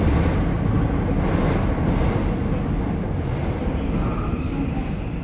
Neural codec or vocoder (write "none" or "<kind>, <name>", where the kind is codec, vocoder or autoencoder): none